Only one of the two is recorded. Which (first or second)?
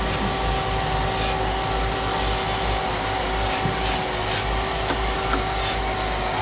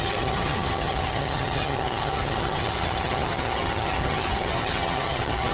first